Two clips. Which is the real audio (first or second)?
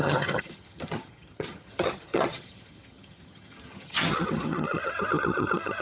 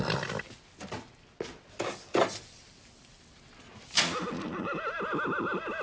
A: second